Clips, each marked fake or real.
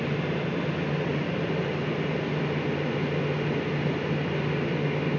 real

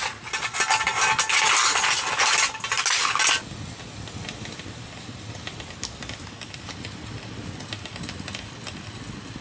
real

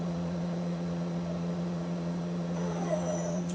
fake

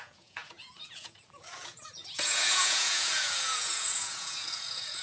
fake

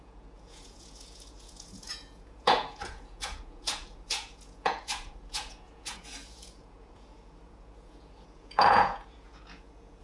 fake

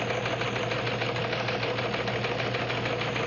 real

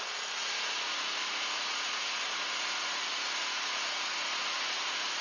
fake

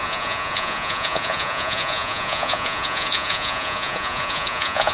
fake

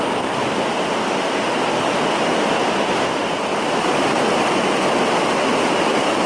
real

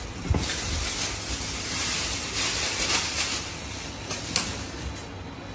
real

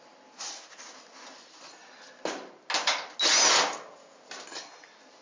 real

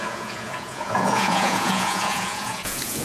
fake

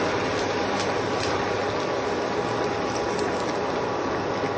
real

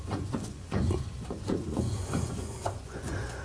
fake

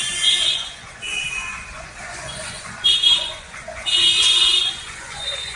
fake